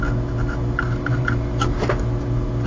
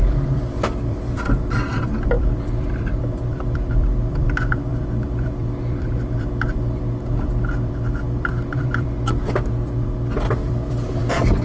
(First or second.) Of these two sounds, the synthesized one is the second